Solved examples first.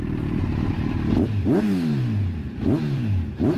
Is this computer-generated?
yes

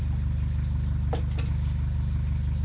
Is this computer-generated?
no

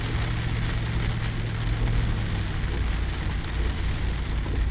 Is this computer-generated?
no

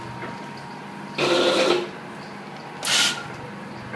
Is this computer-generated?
no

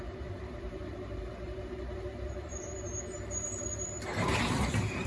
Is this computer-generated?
yes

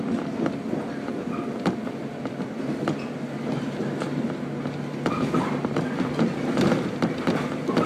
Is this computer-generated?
no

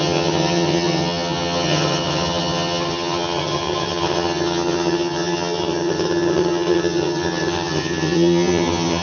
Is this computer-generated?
yes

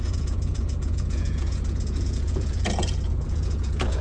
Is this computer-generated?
yes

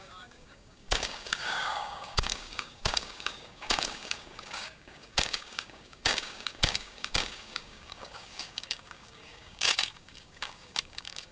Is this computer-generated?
yes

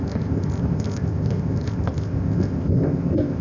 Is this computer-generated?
yes